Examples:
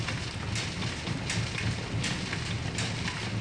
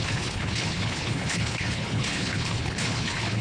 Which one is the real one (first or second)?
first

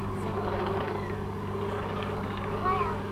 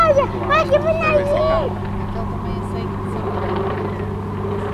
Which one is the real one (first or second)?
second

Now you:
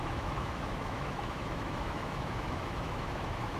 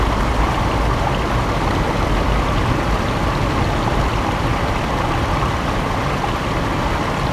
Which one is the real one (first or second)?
second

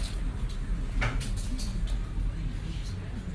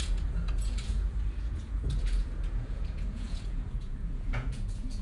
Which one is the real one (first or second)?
first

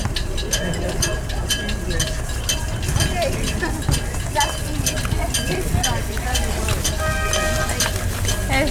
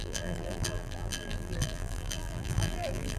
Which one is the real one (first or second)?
first